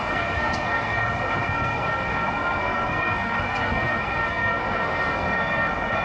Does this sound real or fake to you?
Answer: fake